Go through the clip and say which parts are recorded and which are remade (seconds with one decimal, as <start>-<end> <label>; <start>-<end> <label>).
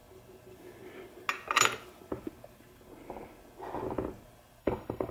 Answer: 0.0-4.6 recorded; 4.6-5.1 remade